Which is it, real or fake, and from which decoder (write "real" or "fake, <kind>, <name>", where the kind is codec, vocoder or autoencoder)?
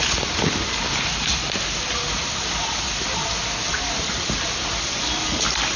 real